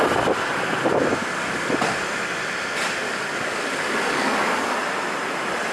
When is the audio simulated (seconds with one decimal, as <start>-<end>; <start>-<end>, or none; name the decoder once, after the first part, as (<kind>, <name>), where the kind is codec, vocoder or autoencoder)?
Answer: 1.2-1.7 (codec, DAC); 3.0-4.8